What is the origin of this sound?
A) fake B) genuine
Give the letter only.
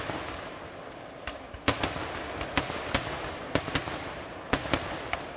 B